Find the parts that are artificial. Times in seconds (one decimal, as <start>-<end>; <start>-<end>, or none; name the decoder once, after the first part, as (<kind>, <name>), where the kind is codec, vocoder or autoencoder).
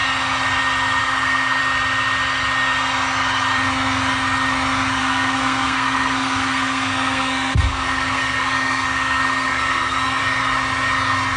1.0-1.6 (codec, SNAC); 5.0-10.2